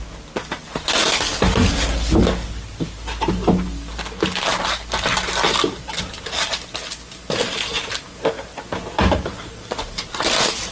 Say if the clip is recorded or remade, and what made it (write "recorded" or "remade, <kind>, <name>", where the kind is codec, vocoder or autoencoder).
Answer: recorded